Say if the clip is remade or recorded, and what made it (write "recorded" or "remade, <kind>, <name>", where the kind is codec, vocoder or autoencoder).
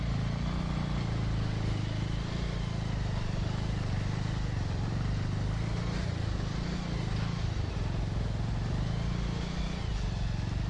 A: recorded